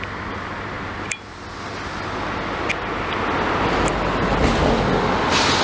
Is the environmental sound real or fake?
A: real